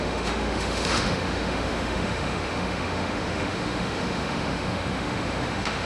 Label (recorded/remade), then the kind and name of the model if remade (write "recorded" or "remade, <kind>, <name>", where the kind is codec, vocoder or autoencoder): remade, autoencoder, DAC-VAE